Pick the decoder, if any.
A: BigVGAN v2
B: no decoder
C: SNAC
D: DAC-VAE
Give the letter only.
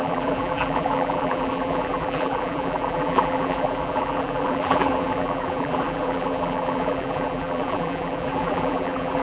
A